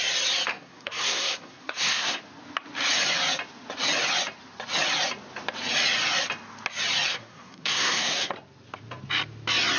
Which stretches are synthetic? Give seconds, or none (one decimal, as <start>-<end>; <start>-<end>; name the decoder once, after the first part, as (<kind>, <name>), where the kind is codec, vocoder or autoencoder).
0.5-2.2 (codec, SNAC); 7.1-8.3